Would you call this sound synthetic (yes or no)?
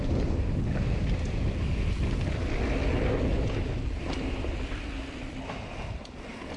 no